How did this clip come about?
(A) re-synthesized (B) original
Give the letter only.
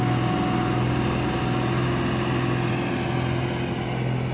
B